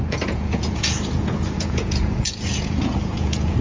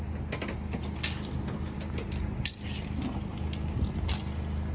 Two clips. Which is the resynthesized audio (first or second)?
first